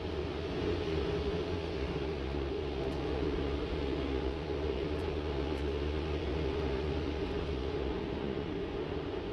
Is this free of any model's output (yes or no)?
no